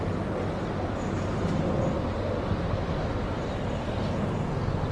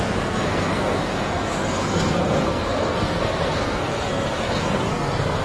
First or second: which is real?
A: first